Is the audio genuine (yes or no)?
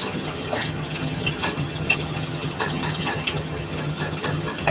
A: no